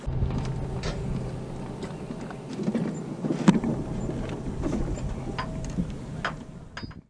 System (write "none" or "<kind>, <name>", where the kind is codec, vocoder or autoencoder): none